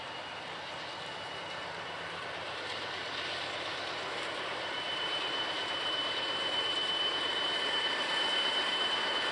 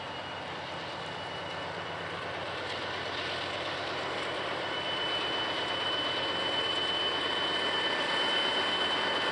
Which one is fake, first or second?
first